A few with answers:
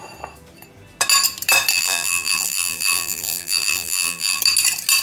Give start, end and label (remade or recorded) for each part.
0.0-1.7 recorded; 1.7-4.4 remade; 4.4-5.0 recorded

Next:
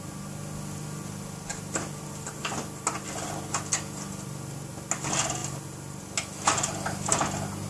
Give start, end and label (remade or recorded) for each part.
0.0-1.5 recorded; 1.5-2.3 remade; 2.3-7.7 recorded

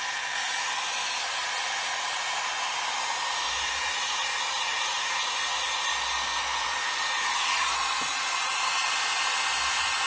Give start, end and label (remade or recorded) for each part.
0.0-5.9 recorded; 5.9-6.8 remade; 6.8-10.1 recorded

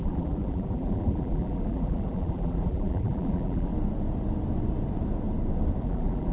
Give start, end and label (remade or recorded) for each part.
0.0-3.7 remade; 3.7-5.8 recorded; 5.8-6.3 remade

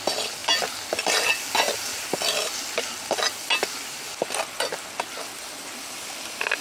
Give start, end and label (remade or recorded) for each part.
0.0-6.6 recorded

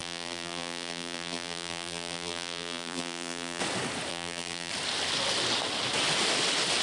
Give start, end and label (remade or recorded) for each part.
0.0-3.6 remade; 3.6-4.1 recorded; 4.1-4.7 remade; 4.7-6.8 recorded

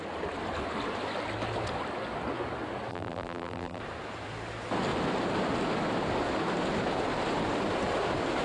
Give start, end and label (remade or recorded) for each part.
0.0-2.9 recorded; 2.9-3.8 remade; 3.8-8.4 recorded